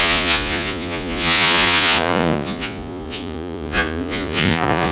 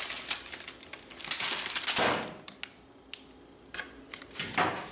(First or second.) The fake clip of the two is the first